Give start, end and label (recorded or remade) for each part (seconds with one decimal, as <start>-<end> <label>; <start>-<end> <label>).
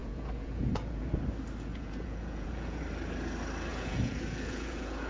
0.0-1.2 remade; 1.2-1.7 recorded; 1.7-2.8 remade; 2.8-3.7 recorded; 3.7-5.1 remade